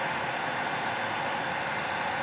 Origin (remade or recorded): recorded